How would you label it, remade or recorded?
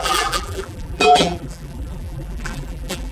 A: remade